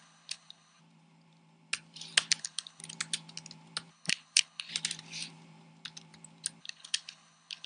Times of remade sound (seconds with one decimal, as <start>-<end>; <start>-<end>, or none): 0.0-0.8; 2.4-2.8; 3.9-4.7; 6.6-7.7